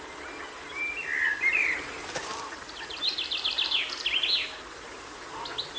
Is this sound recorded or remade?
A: recorded